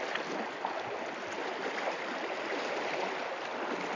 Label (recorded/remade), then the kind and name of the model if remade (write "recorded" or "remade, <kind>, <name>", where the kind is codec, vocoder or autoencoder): recorded